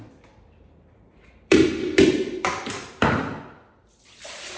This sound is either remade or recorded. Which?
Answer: remade